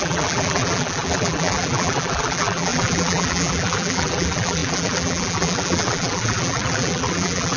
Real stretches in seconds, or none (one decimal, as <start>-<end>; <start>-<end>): none